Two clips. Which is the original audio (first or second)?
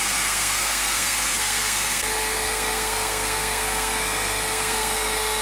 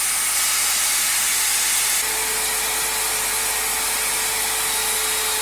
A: second